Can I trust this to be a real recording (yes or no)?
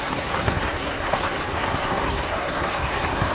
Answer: no